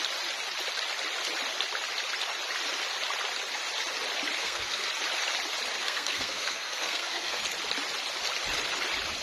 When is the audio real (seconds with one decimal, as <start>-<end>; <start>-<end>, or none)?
0.0-4.4; 4.9-5.8; 7.4-9.2

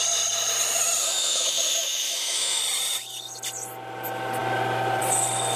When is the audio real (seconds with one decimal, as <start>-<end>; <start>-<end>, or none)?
0.0-1.0; 2.6-5.6

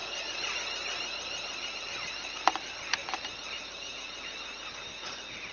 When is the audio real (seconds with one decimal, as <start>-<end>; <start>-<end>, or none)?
0.0-5.5

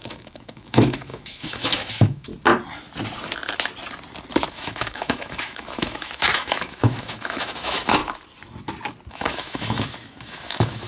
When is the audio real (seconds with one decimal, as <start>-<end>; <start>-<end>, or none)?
2.3-4.5; 8.0-9.1

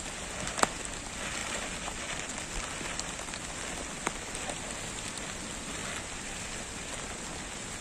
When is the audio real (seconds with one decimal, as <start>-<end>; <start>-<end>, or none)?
0.0-7.8

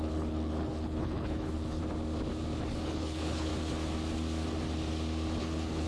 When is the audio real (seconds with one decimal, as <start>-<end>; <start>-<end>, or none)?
1.8-2.7; 3.5-5.4

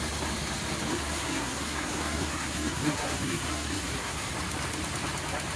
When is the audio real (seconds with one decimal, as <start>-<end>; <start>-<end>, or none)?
0.0-0.9; 4.3-5.6

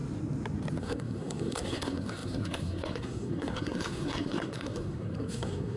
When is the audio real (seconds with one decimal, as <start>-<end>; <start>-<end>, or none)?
0.0-0.8